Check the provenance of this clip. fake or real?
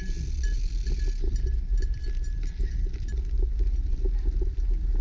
real